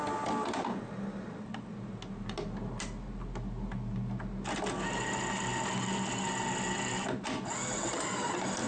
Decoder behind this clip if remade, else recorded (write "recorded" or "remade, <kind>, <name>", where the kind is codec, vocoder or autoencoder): recorded